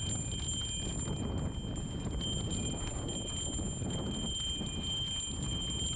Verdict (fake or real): real